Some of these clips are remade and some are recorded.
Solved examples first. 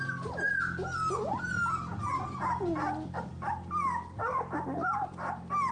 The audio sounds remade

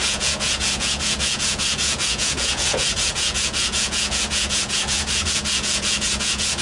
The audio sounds remade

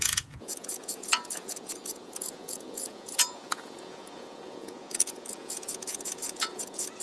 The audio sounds remade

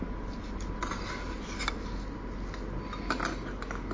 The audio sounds recorded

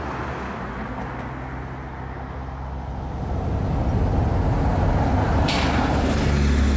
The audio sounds recorded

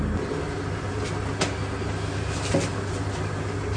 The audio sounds recorded